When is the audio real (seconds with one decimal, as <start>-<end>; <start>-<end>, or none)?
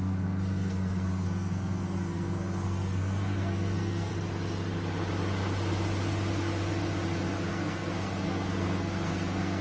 4.1-7.5